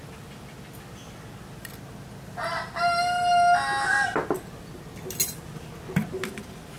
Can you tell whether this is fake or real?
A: real